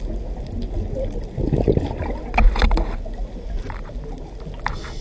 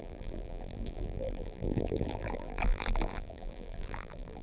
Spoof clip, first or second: second